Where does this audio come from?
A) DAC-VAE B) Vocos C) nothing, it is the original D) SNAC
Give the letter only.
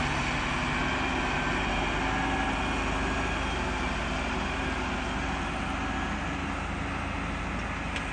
C